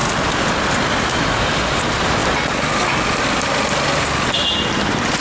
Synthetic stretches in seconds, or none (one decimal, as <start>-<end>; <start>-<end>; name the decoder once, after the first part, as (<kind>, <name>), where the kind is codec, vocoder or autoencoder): none